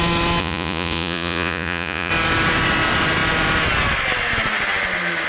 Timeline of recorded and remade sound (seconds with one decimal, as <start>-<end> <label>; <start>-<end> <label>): 0.0-0.4 recorded; 0.4-2.1 remade; 2.1-5.3 recorded